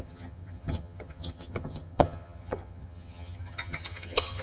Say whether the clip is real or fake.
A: fake